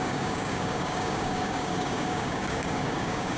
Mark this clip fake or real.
fake